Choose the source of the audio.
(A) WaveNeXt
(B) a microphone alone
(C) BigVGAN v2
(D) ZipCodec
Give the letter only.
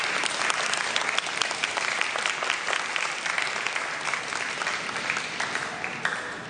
B